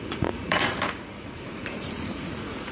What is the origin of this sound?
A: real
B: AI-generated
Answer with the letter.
B